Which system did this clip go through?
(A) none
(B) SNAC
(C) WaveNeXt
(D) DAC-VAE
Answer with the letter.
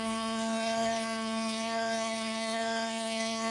B